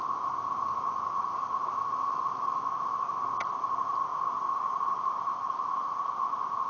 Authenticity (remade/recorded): recorded